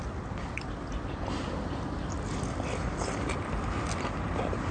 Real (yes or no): yes